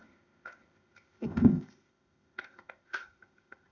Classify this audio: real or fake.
fake